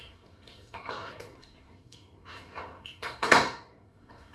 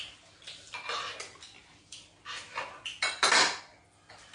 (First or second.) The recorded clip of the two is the second